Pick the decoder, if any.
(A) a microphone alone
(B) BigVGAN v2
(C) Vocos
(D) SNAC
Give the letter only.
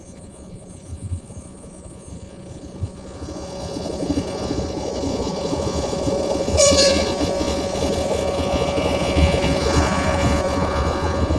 C